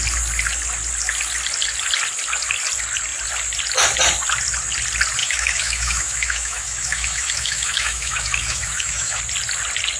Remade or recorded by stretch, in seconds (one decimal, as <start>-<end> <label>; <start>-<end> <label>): 0.0-5.2 recorded; 5.2-9.2 remade; 9.2-10.0 recorded